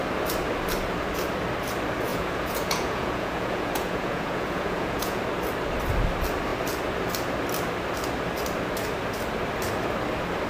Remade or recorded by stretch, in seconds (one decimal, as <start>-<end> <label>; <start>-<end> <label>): 0.0-2.1 recorded; 2.1-5.2 remade; 5.2-10.5 recorded